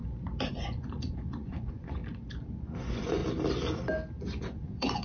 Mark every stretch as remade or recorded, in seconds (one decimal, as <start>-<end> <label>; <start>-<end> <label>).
0.0-0.5 recorded; 0.5-2.0 remade; 2.0-2.5 recorded; 2.5-3.2 remade; 3.2-4.2 recorded; 4.2-5.0 remade